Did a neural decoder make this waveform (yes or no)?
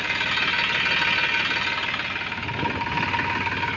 no